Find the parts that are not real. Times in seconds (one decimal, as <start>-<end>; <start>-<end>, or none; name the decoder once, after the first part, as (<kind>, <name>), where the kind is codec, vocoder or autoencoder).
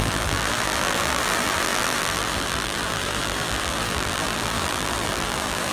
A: 0.0-5.7 (vocoder, BigVGAN v2)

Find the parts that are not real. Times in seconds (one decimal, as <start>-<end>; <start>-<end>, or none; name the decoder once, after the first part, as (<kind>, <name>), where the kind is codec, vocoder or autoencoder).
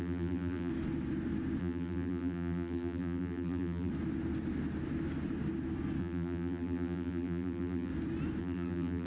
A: 0.0-0.7 (vocoder, BigVGAN v2); 1.6-3.9; 6.0-7.9; 8.4-9.1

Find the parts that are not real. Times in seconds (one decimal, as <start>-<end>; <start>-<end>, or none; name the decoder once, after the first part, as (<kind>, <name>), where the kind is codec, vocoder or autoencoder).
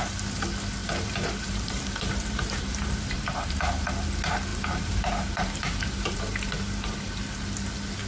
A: 0.8-3.9 (vocoder, BigVGAN v2); 4.5-7.2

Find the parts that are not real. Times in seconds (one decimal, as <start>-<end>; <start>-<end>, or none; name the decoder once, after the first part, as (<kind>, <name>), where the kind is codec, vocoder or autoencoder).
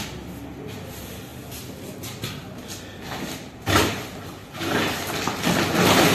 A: 3.4-4.1 (vocoder, BigVGAN v2)